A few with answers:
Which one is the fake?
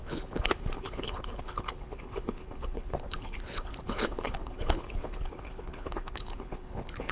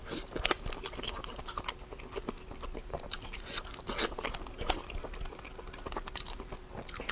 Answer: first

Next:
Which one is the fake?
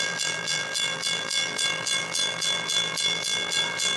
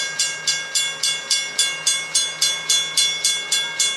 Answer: first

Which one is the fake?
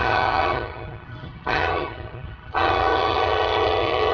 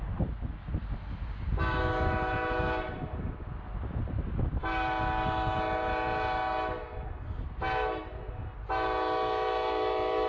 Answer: first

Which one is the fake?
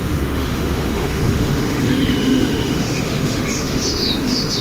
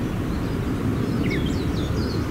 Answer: first